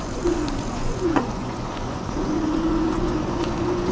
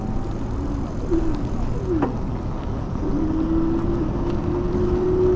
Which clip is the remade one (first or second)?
first